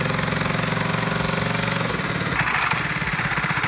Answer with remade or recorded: recorded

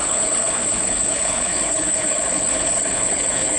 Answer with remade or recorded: remade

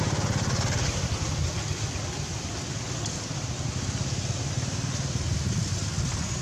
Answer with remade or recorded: recorded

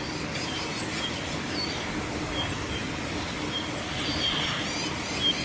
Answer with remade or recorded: recorded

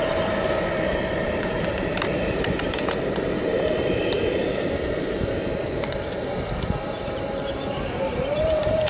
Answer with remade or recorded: remade